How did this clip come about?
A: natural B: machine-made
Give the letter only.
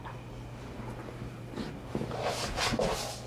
A